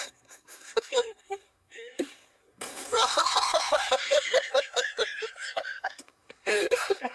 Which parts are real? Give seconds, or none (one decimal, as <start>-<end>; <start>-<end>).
none